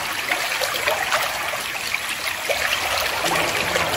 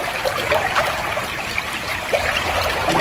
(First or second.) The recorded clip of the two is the first